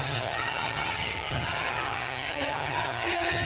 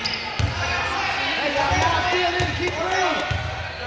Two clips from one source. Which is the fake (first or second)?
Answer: first